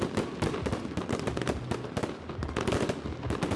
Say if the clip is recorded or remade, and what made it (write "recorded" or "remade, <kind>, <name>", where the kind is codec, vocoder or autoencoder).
recorded